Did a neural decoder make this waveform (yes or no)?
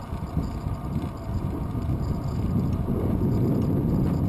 no